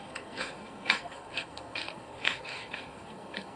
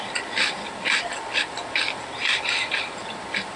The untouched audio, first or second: second